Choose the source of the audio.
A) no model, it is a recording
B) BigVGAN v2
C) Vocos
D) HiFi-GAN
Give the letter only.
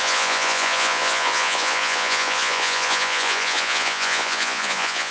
C